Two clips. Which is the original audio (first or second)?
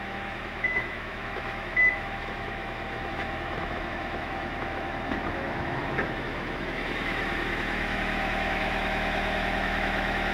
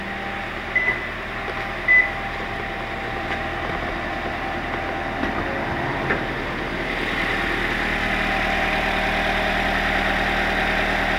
second